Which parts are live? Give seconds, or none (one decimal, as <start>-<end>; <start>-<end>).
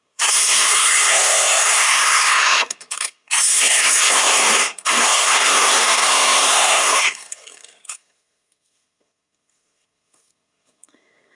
none